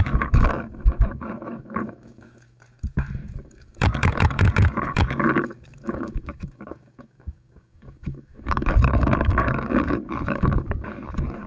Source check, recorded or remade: remade